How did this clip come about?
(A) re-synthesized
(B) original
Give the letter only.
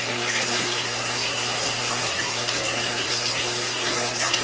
A